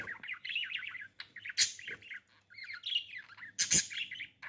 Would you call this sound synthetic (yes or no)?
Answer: no